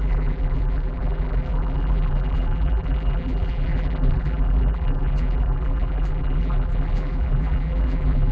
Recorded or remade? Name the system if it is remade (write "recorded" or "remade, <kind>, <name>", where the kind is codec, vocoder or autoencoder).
remade, vocoder, BigVGAN v2